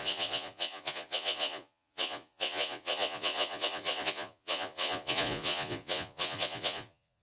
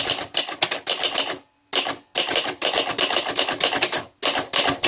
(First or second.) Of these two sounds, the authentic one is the second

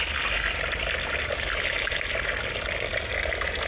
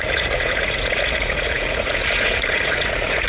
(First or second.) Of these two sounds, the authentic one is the first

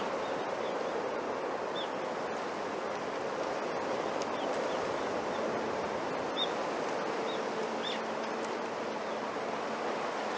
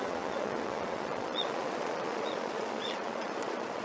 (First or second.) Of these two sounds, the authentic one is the first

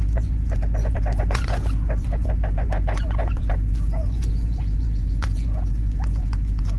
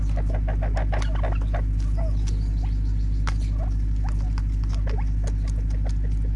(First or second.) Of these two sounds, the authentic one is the second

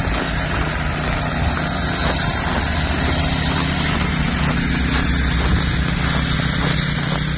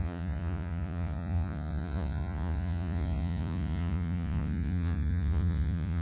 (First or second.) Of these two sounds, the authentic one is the first